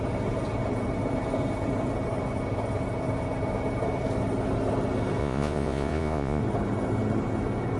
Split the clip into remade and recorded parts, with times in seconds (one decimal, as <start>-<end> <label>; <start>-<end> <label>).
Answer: 0.0-5.2 recorded; 5.2-6.4 remade; 6.4-7.8 recorded

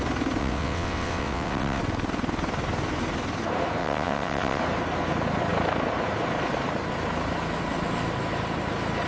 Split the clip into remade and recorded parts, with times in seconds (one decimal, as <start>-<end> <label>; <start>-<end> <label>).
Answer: 0.0-0.4 recorded; 0.4-1.8 remade; 1.8-3.8 recorded; 3.8-4.6 remade; 4.6-9.1 recorded

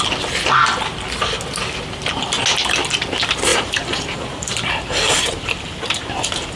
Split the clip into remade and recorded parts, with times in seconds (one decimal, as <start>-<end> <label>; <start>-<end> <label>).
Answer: 0.0-3.5 recorded; 3.5-6.6 remade

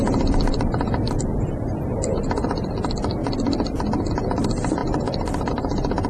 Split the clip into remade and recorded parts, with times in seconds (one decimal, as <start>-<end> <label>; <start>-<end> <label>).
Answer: 0.0-6.1 recorded

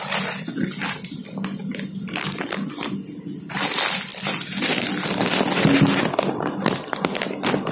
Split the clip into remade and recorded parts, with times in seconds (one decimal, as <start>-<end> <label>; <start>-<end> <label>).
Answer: 0.0-7.7 recorded

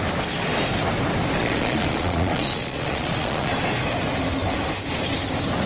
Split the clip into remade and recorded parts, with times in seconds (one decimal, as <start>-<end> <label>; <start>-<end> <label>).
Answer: 0.0-1.4 recorded; 1.4-3.5 remade; 3.5-5.7 recorded